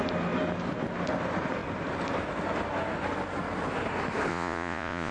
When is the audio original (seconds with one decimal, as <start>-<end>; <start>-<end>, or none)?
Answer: 0.0-4.3

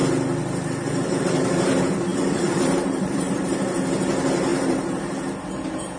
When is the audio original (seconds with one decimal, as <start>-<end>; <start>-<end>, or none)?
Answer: 0.0-2.1; 3.6-4.5; 5.0-6.0

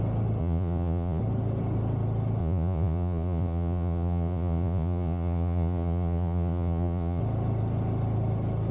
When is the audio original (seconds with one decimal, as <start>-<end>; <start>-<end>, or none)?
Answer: 0.0-0.4; 1.2-2.4; 7.2-8.7

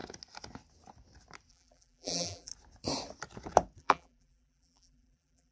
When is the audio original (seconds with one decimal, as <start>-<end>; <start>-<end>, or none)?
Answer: 0.0-1.5; 2.5-3.8

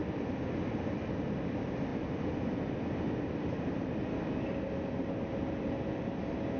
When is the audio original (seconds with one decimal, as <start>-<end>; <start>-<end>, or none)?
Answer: 0.0-6.6

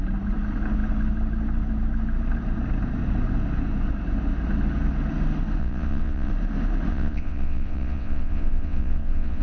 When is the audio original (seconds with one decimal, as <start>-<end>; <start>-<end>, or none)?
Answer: 0.0-5.6; 6.3-6.9